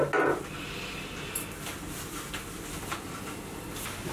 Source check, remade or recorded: recorded